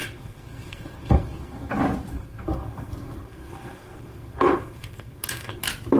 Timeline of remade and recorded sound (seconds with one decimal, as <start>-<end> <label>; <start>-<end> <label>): 0.0-1.7 remade; 1.7-2.1 recorded; 2.1-5.6 remade; 5.6-6.0 recorded

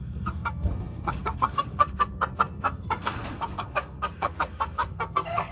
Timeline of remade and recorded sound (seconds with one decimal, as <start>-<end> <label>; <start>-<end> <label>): 0.0-5.5 remade

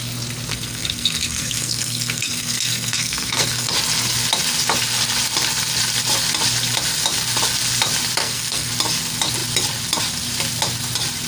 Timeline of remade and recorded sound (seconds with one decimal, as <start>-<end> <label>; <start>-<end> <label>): 0.0-0.5 recorded; 0.5-3.7 remade; 3.7-8.2 recorded; 8.2-8.7 remade; 8.7-11.3 recorded